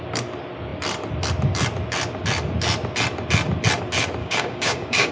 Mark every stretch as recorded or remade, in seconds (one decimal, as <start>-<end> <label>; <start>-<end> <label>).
0.0-4.2 recorded; 4.2-5.1 remade